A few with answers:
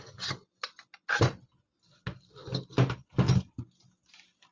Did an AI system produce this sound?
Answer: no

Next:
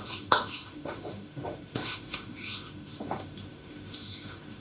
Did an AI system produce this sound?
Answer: yes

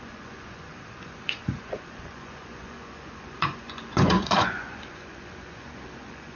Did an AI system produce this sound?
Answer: yes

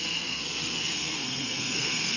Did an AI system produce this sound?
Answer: yes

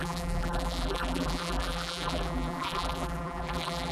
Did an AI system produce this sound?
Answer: yes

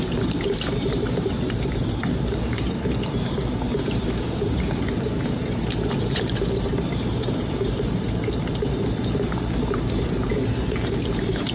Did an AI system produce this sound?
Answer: yes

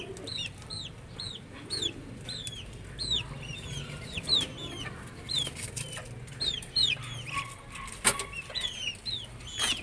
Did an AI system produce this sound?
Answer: no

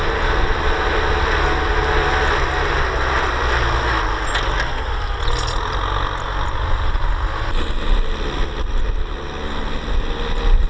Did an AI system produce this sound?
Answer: no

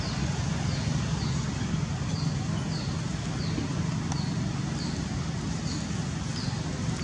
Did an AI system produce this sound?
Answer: no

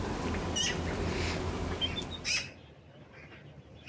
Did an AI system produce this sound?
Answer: no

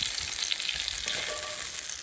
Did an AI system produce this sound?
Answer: no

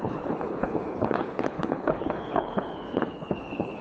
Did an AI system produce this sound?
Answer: yes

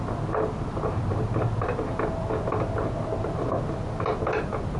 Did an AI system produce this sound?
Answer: no